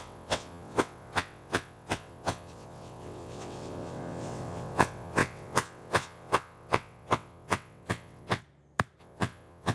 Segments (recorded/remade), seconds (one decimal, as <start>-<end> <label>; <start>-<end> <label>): 0.0-8.4 remade; 8.4-9.0 recorded; 9.0-9.7 remade